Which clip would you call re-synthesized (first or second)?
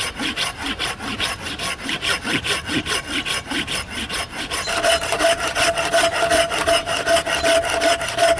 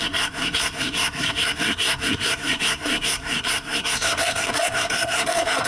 second